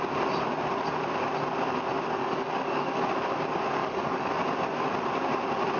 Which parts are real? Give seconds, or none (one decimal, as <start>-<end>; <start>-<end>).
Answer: 0.0-2.2; 3.0-3.8; 4.3-5.8